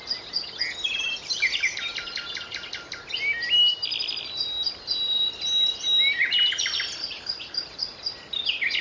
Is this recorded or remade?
recorded